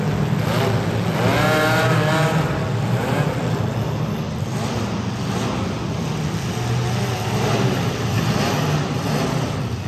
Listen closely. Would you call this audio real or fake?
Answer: real